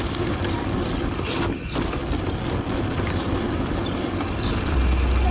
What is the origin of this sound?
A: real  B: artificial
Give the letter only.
A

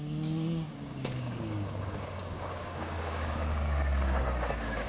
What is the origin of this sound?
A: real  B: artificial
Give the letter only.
B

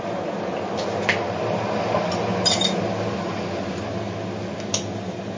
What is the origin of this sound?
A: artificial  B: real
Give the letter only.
B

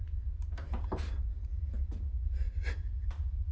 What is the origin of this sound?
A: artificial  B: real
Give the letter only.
B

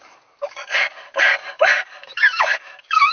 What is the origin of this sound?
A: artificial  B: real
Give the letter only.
A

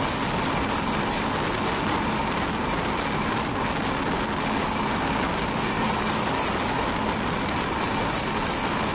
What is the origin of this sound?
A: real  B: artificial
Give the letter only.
A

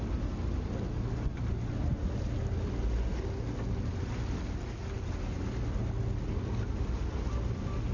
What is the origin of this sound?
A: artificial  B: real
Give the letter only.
B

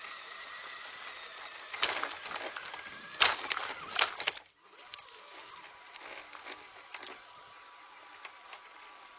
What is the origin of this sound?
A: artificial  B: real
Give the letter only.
B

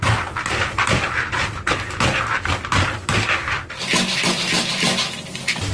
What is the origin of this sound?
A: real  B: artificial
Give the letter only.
A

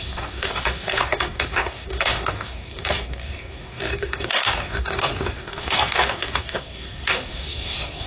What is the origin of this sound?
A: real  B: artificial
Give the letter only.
B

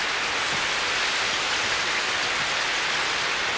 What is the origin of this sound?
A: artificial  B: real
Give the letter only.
B